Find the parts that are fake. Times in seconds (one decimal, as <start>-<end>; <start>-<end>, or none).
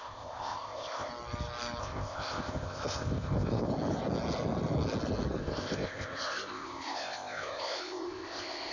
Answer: 0.0-1.1; 1.8-3.7; 5.4-8.7